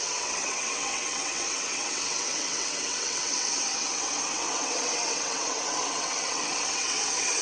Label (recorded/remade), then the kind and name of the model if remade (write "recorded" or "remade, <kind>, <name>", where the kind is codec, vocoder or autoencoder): remade, vocoder, WaveNeXt